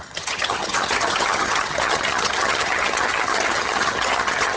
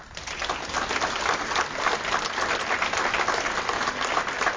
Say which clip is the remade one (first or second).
first